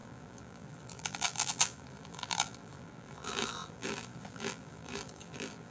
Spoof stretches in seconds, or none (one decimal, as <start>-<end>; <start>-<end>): 0.0-5.7

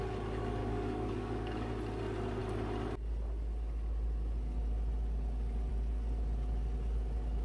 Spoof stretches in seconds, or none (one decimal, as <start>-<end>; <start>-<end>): 0.6-1.7

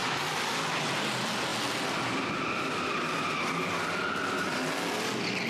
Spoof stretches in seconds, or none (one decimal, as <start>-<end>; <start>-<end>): 0.0-0.8; 1.5-4.2

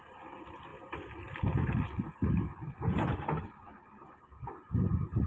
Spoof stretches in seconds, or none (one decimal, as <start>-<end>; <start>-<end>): none